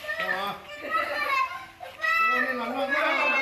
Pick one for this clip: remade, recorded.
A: recorded